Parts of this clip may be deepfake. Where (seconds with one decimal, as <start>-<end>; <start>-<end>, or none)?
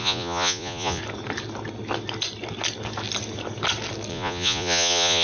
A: 0.0-1.0; 4.1-5.2